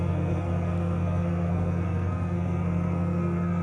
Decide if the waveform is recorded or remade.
remade